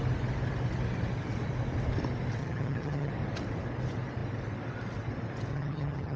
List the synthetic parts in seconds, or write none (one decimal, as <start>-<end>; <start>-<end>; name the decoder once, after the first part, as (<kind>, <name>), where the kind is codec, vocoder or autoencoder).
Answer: 2.4-3.1 (vocoder, HiFi-GAN); 5.5-6.2